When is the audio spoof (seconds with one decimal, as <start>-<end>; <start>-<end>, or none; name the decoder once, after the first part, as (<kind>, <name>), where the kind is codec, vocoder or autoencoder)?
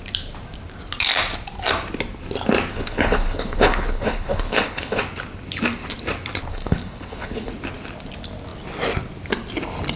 2.7-5.0 (codec, HILCodec); 6.5-7.5